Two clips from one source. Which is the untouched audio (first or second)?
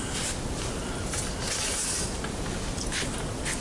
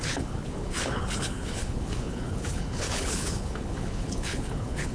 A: first